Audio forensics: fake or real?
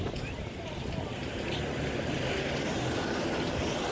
real